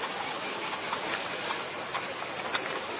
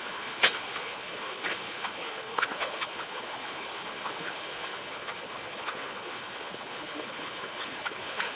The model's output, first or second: second